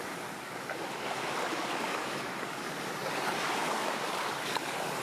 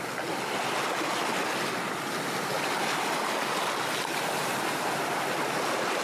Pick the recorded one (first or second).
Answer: second